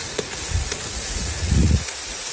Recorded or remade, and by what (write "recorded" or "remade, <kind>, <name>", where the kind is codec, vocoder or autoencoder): remade, vocoder, Vocos